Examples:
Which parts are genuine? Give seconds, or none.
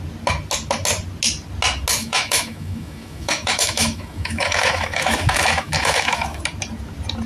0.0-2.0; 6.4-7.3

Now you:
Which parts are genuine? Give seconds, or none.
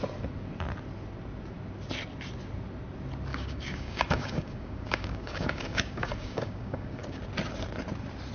0.0-3.3; 7.2-8.3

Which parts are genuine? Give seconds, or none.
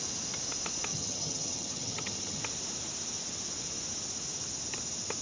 0.0-0.9; 2.4-5.2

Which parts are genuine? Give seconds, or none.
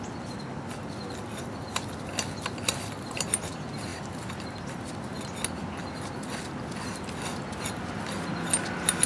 0.0-9.1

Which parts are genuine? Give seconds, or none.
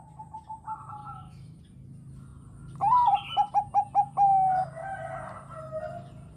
0.0-1.0; 1.6-6.4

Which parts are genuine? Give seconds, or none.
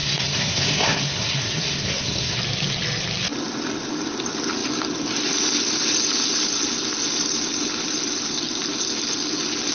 2.4-9.7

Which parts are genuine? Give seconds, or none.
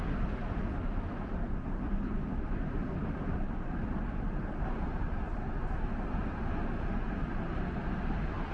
0.0-8.5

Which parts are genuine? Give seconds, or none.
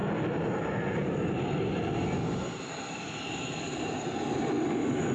0.0-5.1